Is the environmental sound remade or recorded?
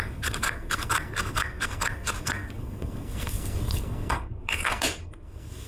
remade